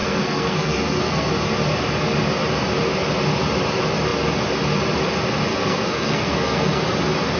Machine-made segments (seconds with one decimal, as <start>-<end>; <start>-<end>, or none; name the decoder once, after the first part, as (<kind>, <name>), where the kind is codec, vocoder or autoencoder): 0.0-1.3 (codec, SNAC); 5.5-6.8